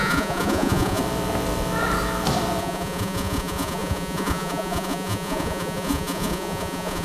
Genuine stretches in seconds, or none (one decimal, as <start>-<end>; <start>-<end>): 1.0-2.6